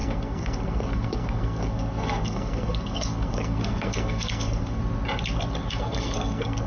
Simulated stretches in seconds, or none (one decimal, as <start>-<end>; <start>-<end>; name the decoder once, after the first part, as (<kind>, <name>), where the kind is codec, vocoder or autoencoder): 0.0-4.8 (codec, SNAC); 5.7-6.7